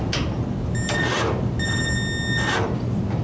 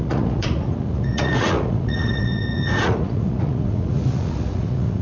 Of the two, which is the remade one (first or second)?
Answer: second